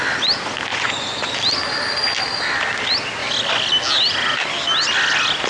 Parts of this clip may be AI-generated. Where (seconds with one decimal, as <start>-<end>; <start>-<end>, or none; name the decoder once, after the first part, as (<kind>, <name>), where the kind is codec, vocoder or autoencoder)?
0.7-1.3 (vocoder, Vocos)